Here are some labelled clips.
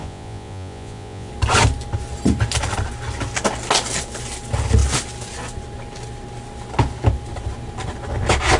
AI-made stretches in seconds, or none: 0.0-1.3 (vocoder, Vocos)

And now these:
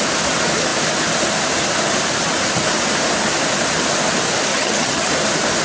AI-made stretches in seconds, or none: 4.5-5.1 (vocoder, HiFi-GAN)